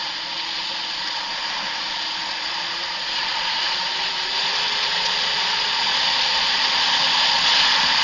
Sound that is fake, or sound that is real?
fake